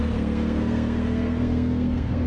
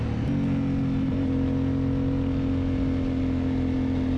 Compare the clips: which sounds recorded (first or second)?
second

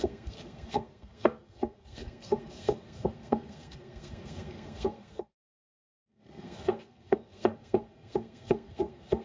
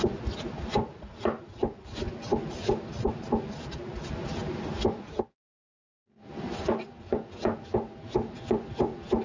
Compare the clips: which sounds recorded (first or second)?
second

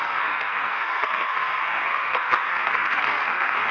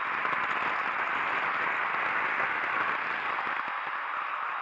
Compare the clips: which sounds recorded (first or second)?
second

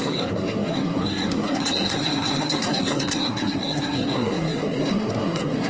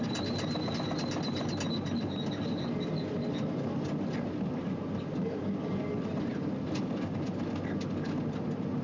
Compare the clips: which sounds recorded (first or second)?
second